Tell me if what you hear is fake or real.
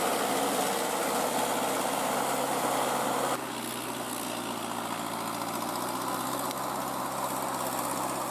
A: real